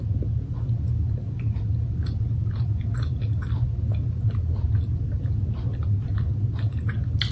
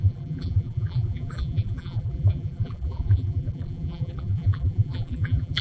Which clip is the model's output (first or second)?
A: second